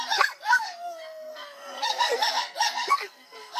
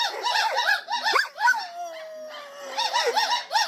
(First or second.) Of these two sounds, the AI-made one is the first